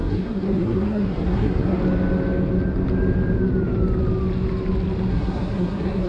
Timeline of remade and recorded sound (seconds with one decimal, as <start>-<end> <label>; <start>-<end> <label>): 0.0-1.8 remade; 1.8-5.1 recorded; 5.1-6.1 remade